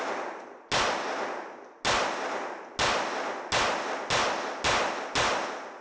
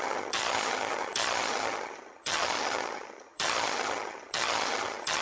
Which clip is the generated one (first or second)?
second